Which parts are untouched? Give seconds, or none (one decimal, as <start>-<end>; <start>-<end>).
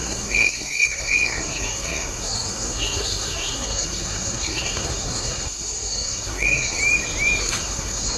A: 6.8-7.4